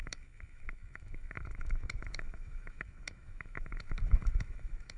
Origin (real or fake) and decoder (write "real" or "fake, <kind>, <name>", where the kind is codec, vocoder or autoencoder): fake, autoencoder, DAC-VAE